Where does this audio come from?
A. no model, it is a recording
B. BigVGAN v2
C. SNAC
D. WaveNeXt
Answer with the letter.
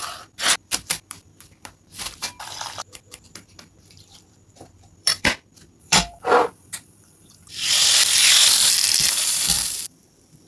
B